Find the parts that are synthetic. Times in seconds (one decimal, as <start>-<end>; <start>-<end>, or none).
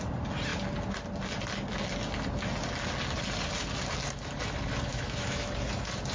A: 4.9-5.5